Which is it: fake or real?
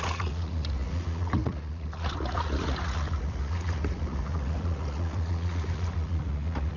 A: fake